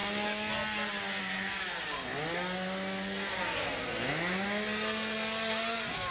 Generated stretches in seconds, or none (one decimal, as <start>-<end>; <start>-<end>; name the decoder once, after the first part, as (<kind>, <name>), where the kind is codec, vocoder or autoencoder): none